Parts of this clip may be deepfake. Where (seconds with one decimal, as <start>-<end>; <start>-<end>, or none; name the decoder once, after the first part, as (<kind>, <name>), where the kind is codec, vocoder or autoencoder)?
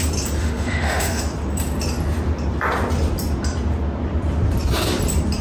0.4-1.2 (autoencoder, DAC-VAE)